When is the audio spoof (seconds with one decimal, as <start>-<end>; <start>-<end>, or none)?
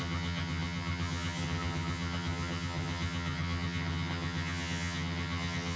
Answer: 0.0-5.8